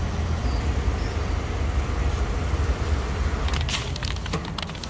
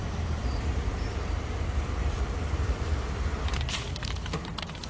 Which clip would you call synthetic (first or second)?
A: second